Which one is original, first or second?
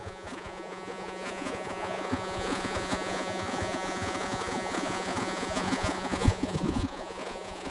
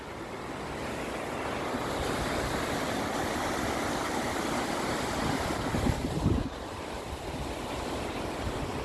second